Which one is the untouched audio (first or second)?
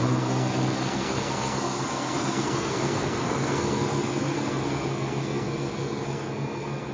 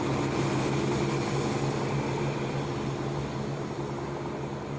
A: second